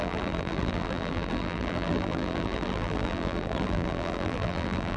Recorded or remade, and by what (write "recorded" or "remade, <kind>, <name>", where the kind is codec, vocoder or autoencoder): remade, vocoder, BigVGAN v2